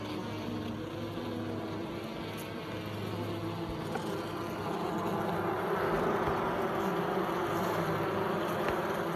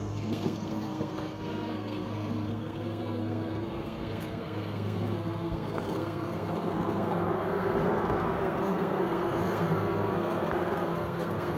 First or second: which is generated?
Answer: second